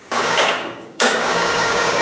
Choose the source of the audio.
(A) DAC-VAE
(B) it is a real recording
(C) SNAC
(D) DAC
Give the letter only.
D